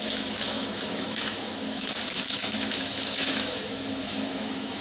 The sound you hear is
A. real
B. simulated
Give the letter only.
B